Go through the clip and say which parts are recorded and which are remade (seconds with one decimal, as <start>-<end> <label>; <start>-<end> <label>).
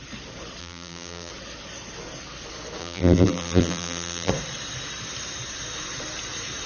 0.0-0.6 recorded; 0.6-1.3 remade; 1.3-2.8 recorded; 2.8-4.3 remade; 4.3-6.7 recorded